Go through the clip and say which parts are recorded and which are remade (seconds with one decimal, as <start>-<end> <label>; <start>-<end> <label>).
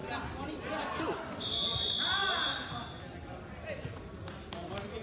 0.0-5.0 recorded